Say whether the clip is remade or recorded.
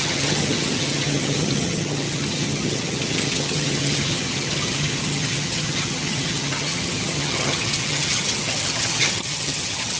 remade